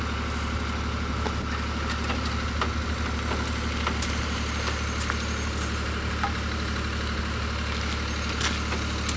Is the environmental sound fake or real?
real